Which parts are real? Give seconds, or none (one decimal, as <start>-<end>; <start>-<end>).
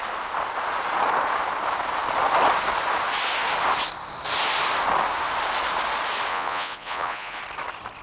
0.0-6.3; 7.4-8.0